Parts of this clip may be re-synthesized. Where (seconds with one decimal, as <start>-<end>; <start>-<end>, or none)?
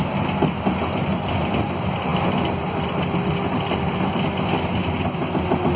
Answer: none